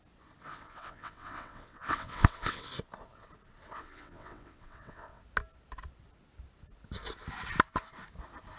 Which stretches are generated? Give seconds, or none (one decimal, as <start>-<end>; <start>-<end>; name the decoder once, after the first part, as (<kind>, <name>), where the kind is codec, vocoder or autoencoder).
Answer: 0.5-2.7 (vocoder, WaveNeXt); 3.7-5.2